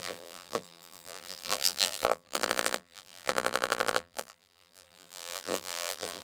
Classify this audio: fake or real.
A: fake